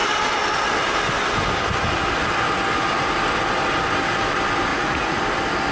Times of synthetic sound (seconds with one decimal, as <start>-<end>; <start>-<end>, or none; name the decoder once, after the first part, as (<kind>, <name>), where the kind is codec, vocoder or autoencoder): 4.7-5.2 (vocoder, Vocos)